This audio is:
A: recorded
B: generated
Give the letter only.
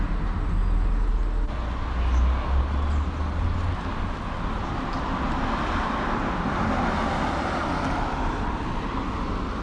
A